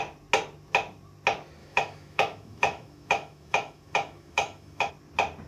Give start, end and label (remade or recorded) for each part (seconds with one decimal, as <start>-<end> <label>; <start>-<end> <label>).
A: 0.0-1.6 recorded; 1.6-4.9 remade; 4.9-5.5 recorded